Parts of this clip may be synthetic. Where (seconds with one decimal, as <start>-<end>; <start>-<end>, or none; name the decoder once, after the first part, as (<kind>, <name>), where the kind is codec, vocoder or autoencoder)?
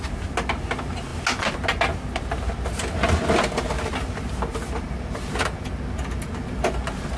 4.6-5.7 (vocoder, BigVGAN v2)